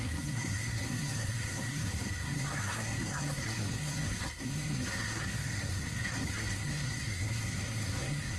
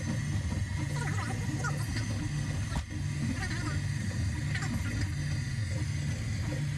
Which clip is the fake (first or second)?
first